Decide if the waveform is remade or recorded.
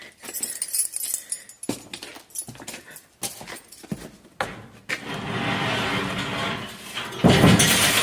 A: recorded